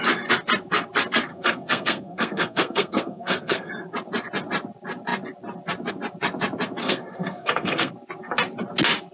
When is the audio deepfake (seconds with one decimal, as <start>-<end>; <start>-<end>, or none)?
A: 1.3-3.7; 6.8-7.9